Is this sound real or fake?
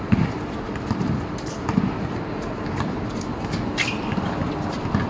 real